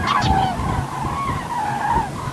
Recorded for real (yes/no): yes